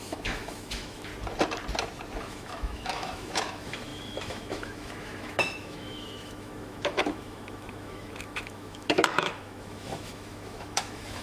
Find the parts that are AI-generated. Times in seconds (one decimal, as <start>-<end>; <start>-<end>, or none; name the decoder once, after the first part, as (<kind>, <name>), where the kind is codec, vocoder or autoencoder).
0.0-1.1 (autoencoder, DAC-VAE); 2.2-11.2